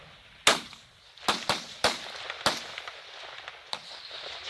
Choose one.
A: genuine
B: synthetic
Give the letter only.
A